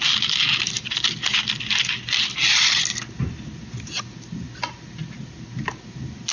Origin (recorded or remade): recorded